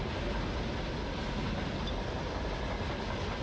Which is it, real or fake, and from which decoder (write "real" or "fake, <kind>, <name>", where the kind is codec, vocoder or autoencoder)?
real